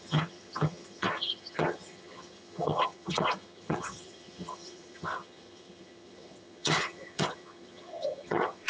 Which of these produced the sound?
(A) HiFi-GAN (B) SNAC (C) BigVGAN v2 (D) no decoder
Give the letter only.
A